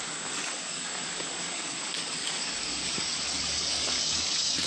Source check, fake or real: fake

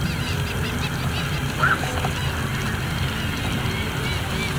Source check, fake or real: real